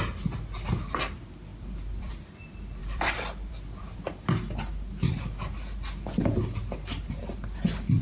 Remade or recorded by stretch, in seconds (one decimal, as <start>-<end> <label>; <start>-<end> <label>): 0.0-1.5 recorded; 1.5-2.1 remade; 2.1-2.8 recorded; 2.8-3.5 remade; 3.5-8.0 recorded